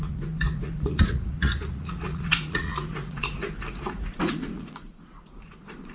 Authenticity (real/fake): fake